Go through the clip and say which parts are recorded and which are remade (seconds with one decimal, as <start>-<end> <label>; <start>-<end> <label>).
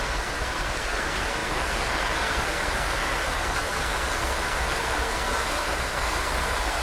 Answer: 0.0-6.8 remade